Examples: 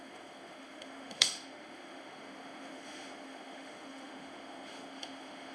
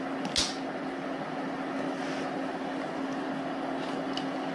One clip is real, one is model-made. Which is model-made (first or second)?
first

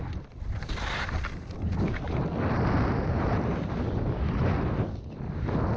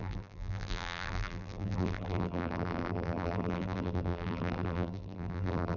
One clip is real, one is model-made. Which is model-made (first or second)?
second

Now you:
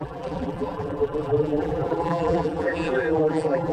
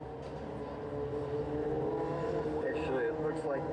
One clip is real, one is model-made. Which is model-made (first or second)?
first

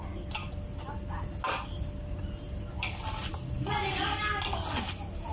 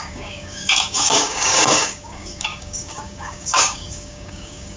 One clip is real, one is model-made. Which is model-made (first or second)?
second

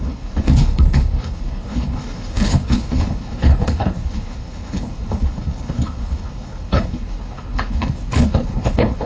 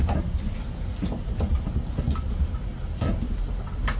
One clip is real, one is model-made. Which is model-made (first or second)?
first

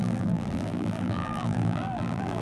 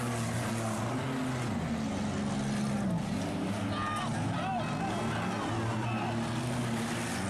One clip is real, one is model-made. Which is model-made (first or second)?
first